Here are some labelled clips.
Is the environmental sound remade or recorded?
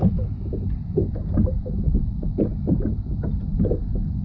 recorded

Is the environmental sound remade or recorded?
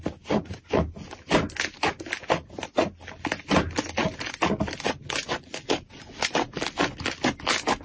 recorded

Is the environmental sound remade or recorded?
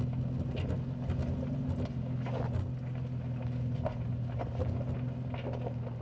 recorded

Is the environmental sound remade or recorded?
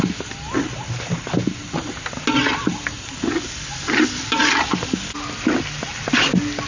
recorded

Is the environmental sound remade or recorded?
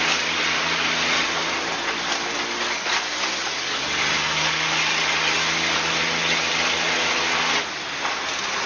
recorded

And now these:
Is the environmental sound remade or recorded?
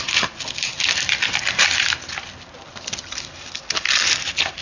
recorded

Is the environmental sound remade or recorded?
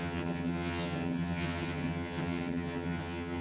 remade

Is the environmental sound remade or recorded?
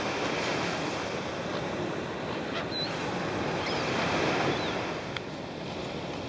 recorded